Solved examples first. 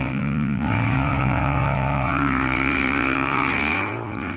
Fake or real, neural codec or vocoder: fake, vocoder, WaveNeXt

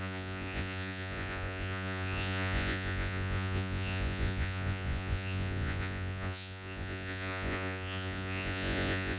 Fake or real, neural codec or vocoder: fake, vocoder, Vocos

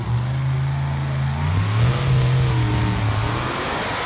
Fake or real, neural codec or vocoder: real